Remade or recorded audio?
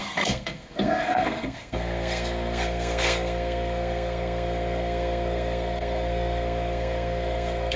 remade